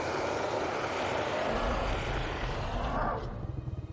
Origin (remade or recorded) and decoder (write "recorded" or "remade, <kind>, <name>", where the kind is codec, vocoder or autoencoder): recorded